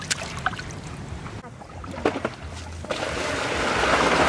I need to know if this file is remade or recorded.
recorded